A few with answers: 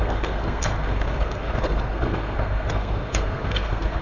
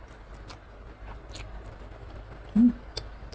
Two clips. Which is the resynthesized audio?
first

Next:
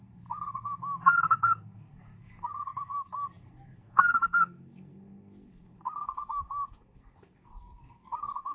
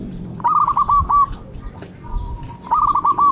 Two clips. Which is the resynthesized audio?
first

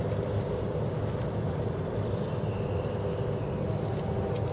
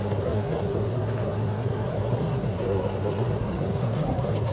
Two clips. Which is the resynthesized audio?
second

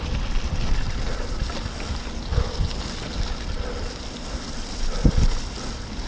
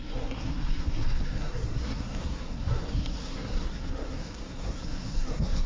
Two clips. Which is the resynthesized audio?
second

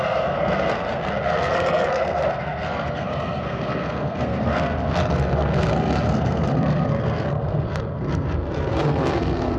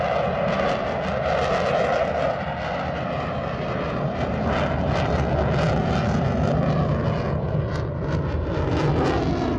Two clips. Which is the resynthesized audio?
first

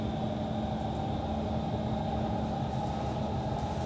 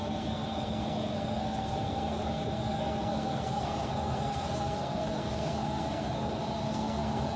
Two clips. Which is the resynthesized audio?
second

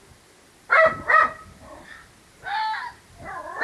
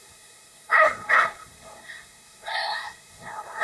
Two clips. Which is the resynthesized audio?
second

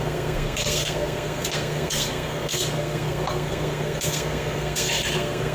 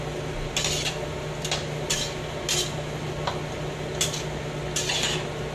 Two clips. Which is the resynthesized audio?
first